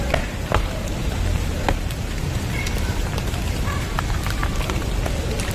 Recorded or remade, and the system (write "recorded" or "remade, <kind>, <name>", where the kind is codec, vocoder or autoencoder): remade, vocoder, BigVGAN v2